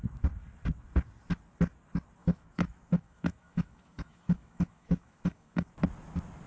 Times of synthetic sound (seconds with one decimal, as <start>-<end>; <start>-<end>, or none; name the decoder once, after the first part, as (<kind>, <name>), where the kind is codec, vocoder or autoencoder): 2.2-5.7 (autoencoder, DAC-VAE)